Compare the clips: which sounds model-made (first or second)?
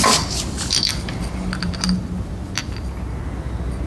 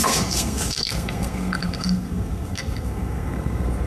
second